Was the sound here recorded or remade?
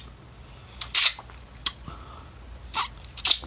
recorded